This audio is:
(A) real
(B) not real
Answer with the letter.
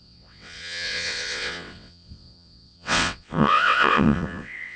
B